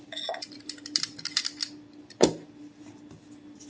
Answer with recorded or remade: recorded